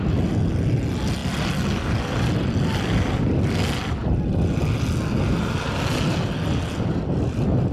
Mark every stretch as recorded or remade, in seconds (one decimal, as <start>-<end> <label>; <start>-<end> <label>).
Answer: 0.0-7.7 recorded